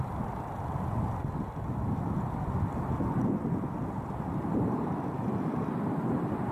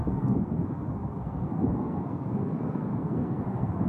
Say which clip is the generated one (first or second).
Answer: second